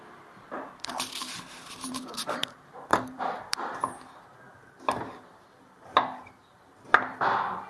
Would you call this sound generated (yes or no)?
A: yes